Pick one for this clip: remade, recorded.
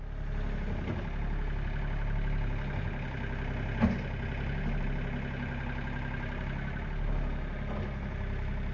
recorded